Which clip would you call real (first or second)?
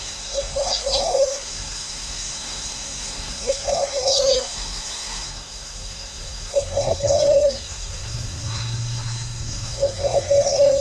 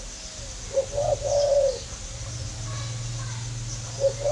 second